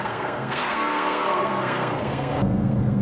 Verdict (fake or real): fake